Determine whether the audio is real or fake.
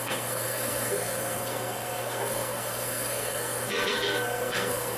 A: fake